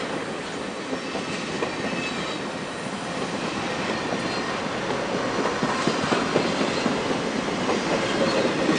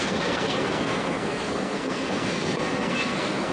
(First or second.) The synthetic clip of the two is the second